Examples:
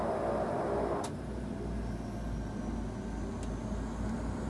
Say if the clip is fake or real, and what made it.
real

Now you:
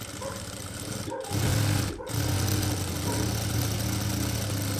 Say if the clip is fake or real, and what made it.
real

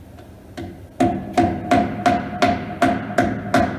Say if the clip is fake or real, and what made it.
real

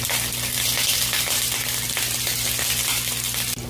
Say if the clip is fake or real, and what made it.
real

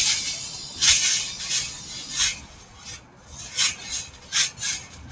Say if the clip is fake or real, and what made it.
real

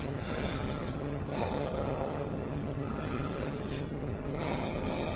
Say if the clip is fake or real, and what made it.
fake, vocoder, HiFi-GAN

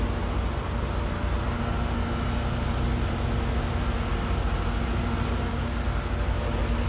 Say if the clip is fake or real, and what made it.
real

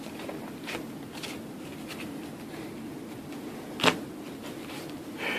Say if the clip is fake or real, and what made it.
real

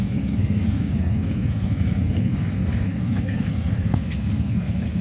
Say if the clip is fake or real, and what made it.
fake, codec, SNAC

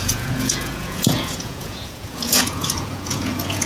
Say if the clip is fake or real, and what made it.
fake, vocoder, Vocos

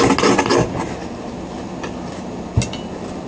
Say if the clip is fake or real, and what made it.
real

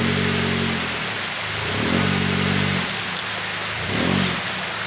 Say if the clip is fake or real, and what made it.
real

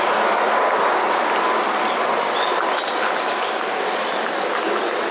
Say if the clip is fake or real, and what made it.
real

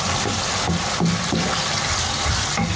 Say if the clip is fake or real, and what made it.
real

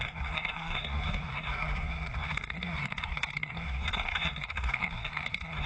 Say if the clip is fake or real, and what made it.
fake, codec, SNAC